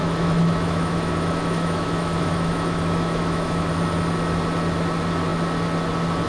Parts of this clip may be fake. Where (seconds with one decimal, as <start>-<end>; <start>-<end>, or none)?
0.0-3.7